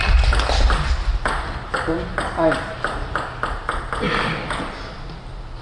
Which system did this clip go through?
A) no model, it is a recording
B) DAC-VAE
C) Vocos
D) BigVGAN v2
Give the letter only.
A